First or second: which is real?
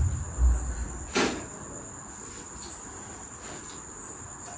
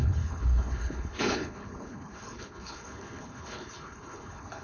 first